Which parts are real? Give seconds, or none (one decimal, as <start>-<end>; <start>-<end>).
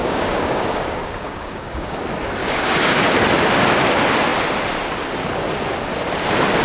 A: 2.0-2.4; 3.1-6.6